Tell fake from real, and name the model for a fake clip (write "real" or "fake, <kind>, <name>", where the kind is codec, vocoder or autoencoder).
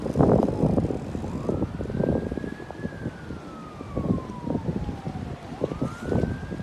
real